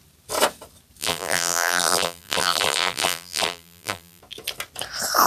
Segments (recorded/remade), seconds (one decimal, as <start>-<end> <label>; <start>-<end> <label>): 0.0-1.0 recorded; 1.0-4.2 remade; 4.2-5.3 recorded